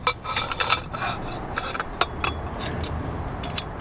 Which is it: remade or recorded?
recorded